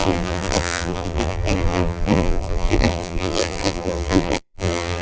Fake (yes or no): yes